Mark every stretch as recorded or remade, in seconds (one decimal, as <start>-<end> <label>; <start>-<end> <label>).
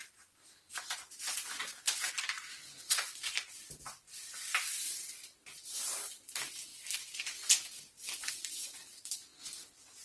0.0-6.7 remade; 6.7-8.3 recorded; 8.3-9.3 remade; 9.3-10.0 recorded